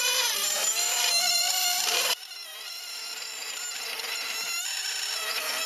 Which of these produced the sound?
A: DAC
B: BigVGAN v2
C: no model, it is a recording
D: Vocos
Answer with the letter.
B